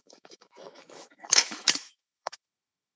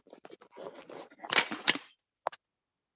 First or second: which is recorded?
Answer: second